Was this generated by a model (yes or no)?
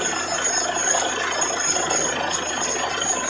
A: no